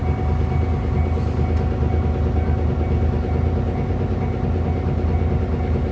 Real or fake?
real